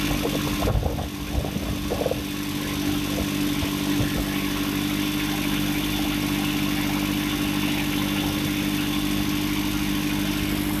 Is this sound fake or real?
real